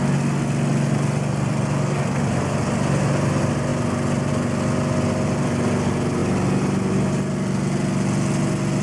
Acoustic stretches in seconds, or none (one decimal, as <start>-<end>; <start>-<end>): 0.0-8.8